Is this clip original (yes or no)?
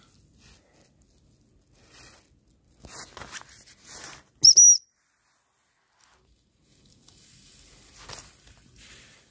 yes